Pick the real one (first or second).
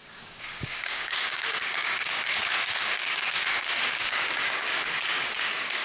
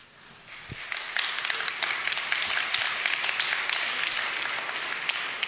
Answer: second